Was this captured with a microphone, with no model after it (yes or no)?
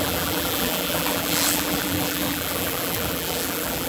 no